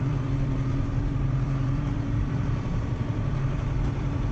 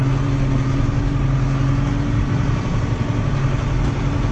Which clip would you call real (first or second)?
second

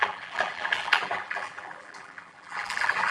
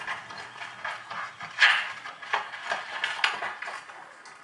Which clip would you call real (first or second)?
second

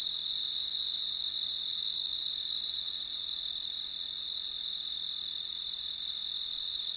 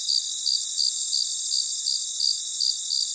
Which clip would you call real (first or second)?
second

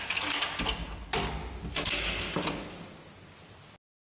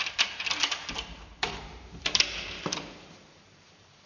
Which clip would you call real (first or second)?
first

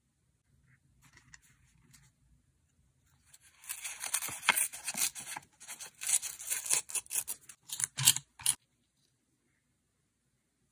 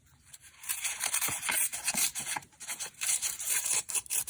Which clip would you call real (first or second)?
first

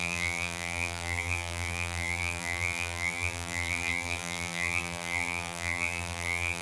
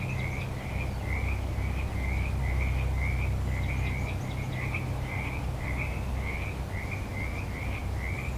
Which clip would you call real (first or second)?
second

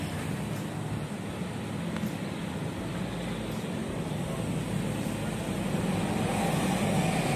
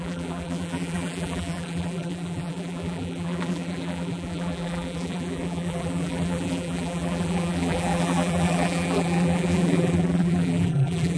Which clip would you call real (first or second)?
first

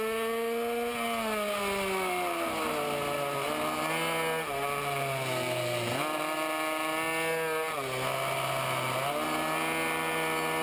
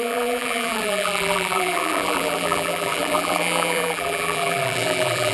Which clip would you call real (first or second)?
first